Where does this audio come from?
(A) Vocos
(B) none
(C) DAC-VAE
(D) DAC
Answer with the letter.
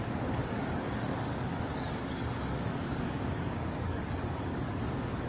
D